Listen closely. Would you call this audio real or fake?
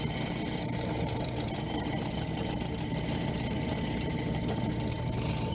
fake